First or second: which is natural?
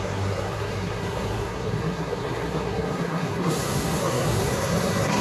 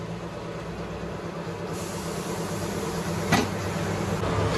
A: second